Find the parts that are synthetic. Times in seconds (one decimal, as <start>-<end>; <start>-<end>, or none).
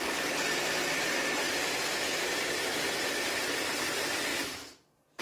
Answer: none